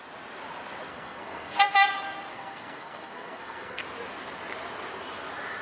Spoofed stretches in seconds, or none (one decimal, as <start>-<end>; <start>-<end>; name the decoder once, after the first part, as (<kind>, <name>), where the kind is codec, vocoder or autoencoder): 0.9-1.7 (codec, SNAC); 2.3-3.8